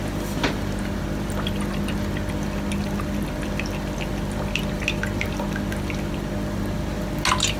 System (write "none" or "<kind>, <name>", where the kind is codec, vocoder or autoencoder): none